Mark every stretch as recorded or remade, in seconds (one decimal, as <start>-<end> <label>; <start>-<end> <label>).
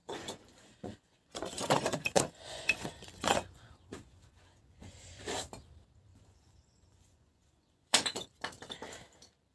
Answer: 0.0-5.2 remade; 5.2-6.1 recorded; 6.1-8.3 remade; 8.3-9.5 recorded